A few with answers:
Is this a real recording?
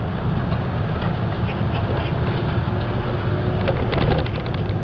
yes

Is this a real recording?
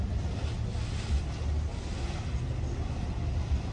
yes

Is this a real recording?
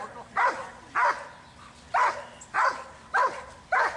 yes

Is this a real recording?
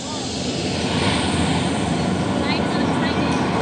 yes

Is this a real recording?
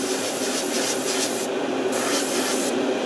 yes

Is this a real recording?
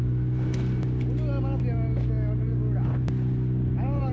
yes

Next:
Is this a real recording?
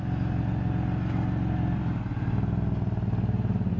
yes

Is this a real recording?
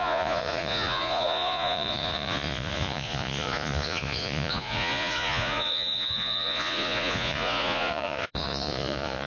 no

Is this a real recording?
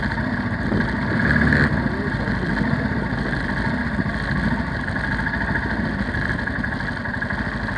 yes